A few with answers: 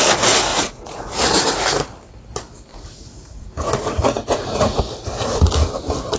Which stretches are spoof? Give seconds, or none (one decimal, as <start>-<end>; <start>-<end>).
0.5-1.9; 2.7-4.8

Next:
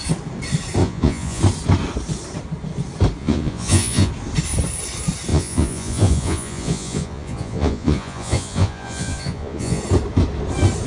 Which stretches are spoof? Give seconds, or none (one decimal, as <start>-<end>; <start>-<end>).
0.8-1.4; 3.2-4.1; 5.3-9.8

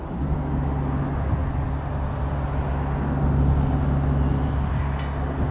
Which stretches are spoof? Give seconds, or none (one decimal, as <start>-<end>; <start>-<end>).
none

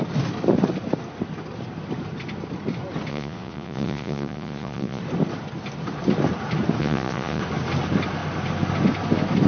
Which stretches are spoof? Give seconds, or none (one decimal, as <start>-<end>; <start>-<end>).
3.1-5.0; 6.8-7.4